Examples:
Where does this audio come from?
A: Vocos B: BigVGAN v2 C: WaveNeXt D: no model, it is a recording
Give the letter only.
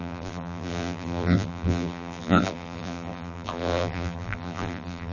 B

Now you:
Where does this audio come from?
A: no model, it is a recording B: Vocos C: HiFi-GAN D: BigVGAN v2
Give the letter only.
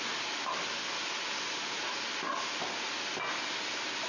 A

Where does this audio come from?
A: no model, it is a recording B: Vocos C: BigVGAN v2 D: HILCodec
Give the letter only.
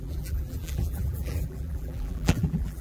C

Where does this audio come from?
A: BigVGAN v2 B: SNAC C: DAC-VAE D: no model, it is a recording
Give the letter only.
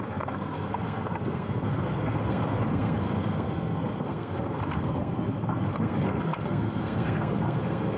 B